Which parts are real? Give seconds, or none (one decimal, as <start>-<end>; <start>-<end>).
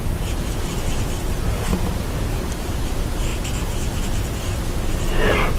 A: 0.0-5.6